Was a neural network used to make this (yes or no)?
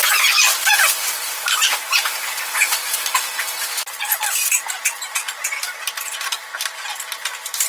no